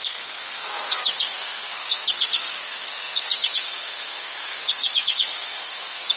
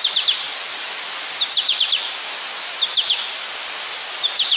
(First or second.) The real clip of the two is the second